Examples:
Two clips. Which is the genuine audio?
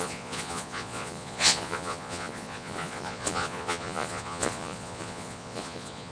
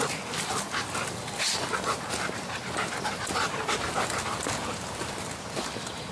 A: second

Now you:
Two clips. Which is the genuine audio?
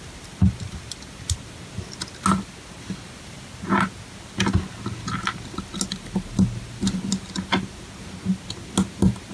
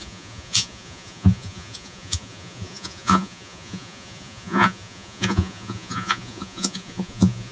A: first